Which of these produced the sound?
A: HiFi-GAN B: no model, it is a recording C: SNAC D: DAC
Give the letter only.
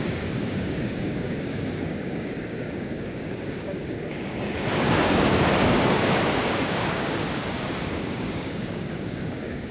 D